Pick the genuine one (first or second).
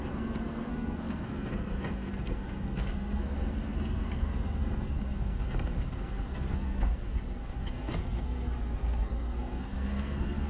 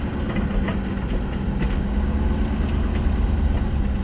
second